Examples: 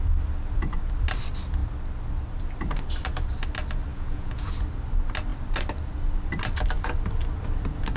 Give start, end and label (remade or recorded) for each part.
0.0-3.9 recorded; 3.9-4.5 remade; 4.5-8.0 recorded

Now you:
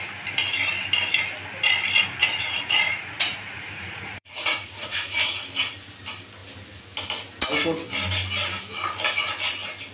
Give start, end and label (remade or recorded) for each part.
0.0-2.2 recorded; 2.2-5.2 remade; 5.2-9.9 recorded

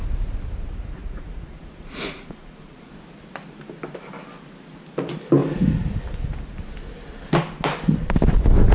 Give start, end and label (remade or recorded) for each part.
0.0-1.0 recorded; 1.0-2.8 remade; 2.8-8.7 recorded